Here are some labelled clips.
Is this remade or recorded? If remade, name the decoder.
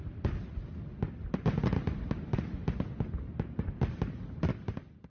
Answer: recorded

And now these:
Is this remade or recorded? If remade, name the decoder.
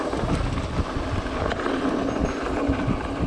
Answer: recorded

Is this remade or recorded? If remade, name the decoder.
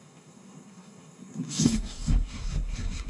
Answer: remade, codec, SNAC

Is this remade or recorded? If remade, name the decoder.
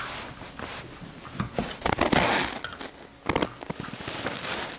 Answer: recorded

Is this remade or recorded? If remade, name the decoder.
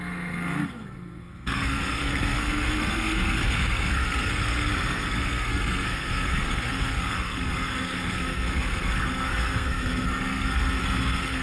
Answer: remade, codec, SNAC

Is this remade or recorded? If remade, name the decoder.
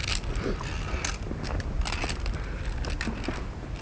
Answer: recorded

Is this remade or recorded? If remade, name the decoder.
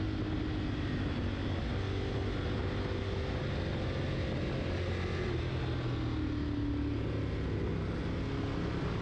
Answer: recorded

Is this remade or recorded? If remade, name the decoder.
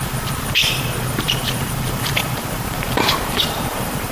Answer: remade, vocoder, BigVGAN v2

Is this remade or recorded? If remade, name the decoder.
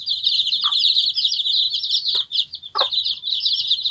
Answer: recorded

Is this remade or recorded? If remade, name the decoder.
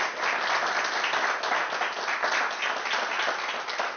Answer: recorded